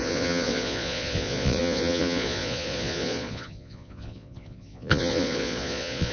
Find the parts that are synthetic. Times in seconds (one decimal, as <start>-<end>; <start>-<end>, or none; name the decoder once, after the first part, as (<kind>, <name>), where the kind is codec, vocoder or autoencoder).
0.0-6.1 (vocoder, Vocos)